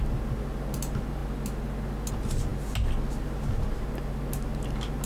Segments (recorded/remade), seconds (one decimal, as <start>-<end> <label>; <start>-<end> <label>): 0.0-5.1 recorded